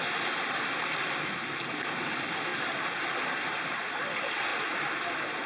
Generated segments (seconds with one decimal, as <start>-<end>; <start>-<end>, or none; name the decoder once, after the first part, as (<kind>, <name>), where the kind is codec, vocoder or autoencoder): 0.0-2.5 (vocoder, BigVGAN v2); 3.5-4.5